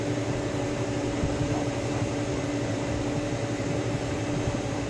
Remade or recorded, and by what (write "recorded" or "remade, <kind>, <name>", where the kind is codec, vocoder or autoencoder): remade, vocoder, BigVGAN v2